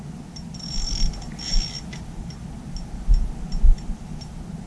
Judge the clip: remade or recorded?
recorded